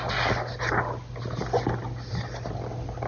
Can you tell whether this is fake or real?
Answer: real